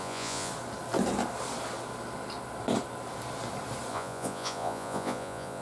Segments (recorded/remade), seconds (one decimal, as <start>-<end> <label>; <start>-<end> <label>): 0.0-0.5 remade; 0.5-3.9 recorded; 3.9-5.6 remade